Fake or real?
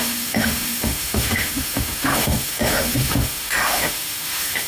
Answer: fake